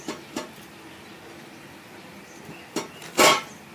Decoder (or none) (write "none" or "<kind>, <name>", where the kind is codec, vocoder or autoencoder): none